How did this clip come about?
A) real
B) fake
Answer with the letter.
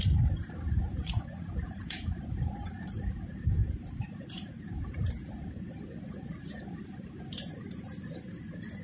B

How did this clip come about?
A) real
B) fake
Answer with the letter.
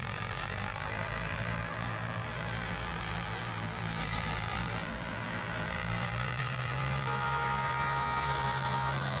B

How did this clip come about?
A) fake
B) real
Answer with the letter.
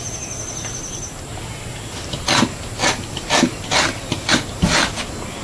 B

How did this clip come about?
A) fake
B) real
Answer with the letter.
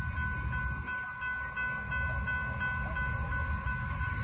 B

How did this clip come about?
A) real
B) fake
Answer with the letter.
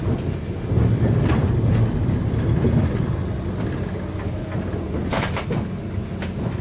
A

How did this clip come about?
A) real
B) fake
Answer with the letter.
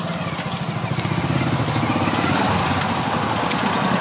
A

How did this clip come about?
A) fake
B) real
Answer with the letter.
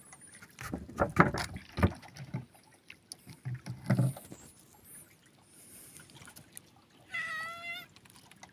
B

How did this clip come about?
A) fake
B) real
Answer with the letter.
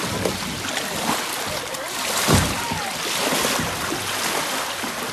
B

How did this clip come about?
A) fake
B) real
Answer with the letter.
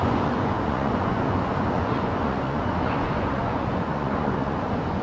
A